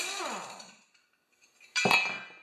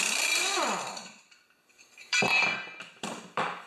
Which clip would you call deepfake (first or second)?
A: second